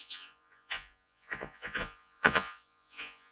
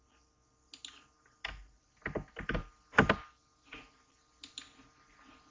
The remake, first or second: first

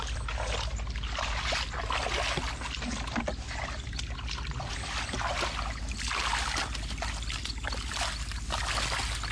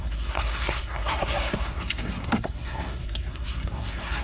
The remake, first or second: second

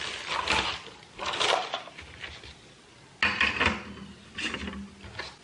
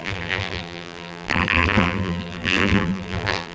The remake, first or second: second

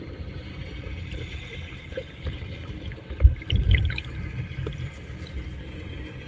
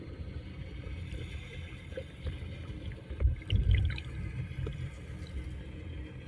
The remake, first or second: first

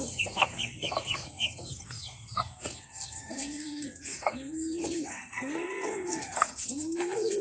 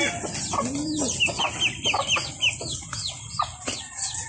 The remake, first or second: first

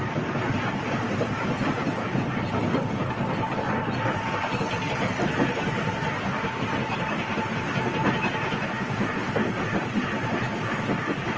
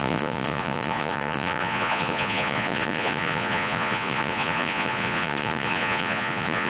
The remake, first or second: second